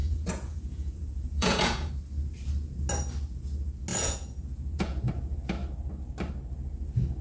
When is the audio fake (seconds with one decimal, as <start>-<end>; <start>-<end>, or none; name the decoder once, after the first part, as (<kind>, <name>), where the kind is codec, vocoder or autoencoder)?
0.0-1.9 (vocoder, Vocos); 3.9-5.1